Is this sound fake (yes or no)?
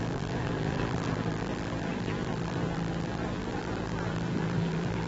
yes